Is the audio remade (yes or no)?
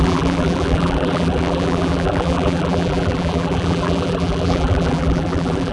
yes